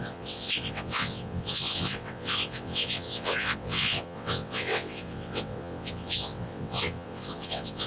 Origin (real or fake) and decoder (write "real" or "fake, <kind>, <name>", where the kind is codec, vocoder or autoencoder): fake, vocoder, WaveNeXt